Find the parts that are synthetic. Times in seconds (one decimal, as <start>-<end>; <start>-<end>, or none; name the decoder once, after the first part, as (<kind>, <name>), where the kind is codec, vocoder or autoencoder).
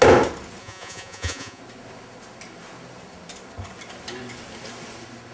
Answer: 0.6-1.6 (vocoder, Vocos)